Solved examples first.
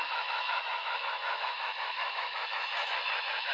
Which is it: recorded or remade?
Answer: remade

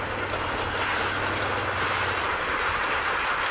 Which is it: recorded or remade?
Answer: recorded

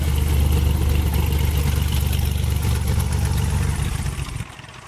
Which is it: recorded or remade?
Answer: recorded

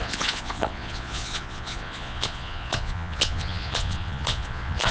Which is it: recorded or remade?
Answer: remade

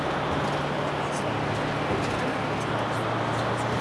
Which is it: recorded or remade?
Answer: recorded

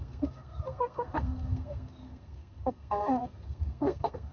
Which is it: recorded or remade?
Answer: remade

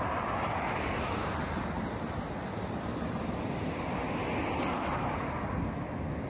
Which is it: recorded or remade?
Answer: recorded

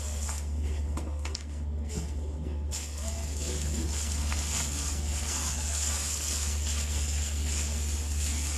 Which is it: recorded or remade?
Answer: remade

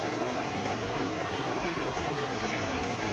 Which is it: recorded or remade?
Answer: remade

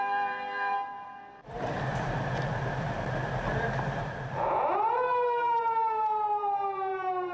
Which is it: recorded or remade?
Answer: remade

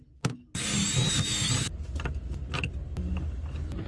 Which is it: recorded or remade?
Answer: recorded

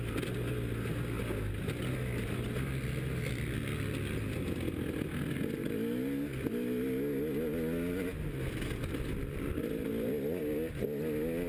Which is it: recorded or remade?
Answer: recorded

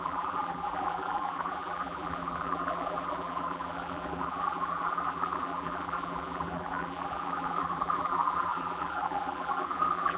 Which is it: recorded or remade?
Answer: remade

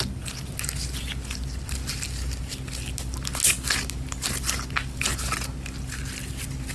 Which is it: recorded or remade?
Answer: recorded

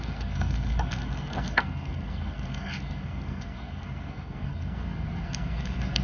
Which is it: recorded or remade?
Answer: remade